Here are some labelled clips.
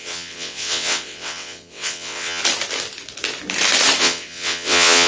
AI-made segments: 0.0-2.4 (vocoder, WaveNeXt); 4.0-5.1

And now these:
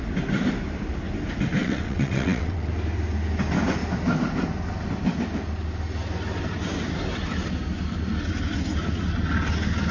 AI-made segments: 1.6-2.7 (vocoder, WaveNeXt)

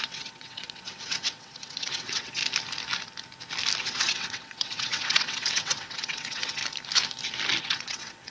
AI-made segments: 0.0-2.4 (vocoder, WaveNeXt); 3.8-6.6; 7.6-8.3

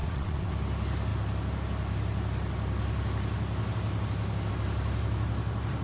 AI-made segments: 0.0-0.5 (vocoder, WaveNeXt)

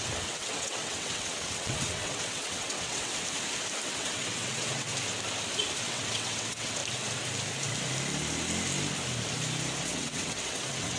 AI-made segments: 0.0-3.1 (vocoder, WaveNeXt); 3.9-4.9; 5.8-6.8; 9.8-11.0

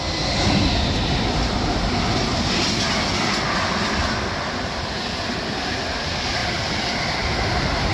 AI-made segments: none

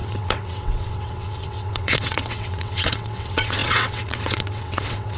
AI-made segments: 0.0-5.2 (vocoder, WaveNeXt)